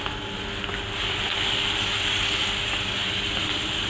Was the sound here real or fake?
real